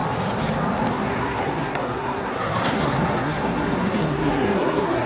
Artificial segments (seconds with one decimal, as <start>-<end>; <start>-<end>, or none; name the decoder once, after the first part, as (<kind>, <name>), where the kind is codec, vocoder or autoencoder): 0.9-5.1 (codec, SNAC)